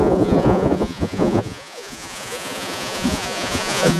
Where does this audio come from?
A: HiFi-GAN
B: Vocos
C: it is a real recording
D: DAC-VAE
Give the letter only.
B